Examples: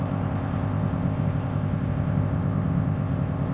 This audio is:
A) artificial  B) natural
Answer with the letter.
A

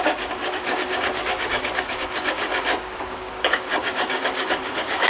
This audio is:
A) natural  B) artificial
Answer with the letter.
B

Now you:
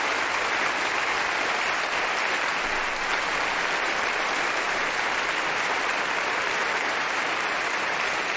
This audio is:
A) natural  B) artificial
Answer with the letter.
A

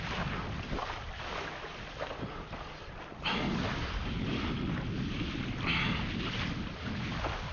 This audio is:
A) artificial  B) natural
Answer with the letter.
B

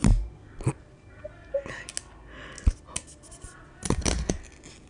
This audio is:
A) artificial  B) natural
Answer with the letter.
B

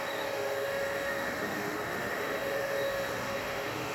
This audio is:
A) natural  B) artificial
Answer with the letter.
B